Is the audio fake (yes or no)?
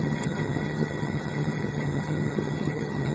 yes